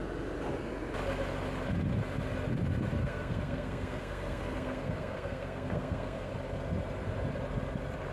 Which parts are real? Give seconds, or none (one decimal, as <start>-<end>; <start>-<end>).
0.0-3.0; 6.3-8.1